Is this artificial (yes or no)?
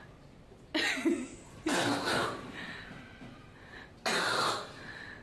no